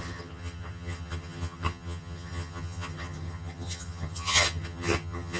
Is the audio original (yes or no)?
no